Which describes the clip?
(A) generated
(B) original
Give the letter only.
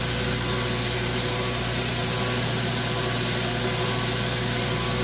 B